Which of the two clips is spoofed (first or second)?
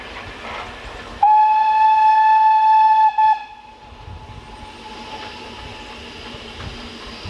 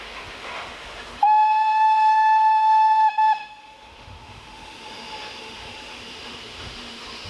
second